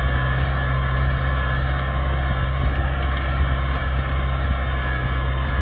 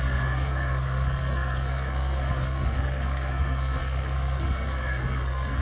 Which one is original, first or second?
first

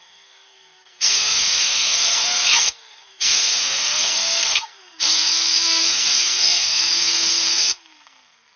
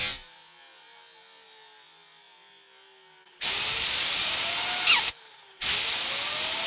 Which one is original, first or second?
second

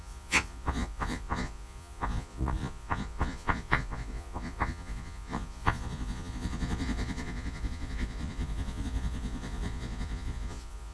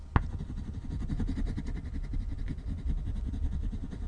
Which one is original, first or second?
second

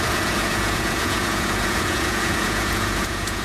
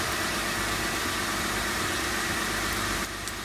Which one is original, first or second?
second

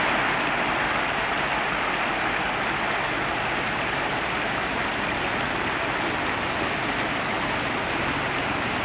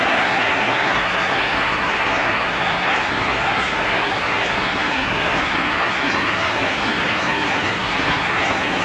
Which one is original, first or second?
first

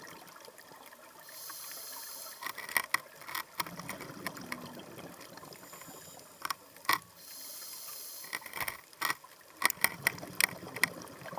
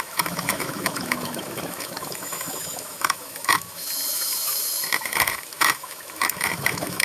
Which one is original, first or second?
first